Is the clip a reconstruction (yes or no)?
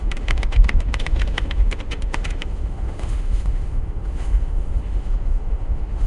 yes